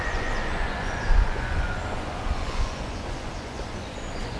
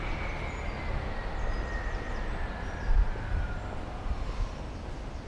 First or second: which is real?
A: second